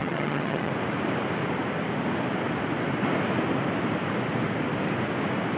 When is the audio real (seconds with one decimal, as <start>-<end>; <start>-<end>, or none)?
0.7-5.6

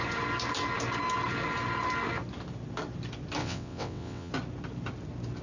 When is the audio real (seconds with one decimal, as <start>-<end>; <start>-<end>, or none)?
0.0-3.4; 4.3-5.4